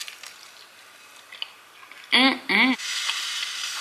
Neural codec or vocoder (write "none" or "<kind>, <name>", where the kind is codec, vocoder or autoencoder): none